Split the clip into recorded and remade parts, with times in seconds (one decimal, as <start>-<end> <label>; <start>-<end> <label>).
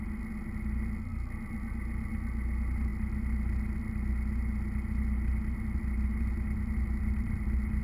0.0-7.8 recorded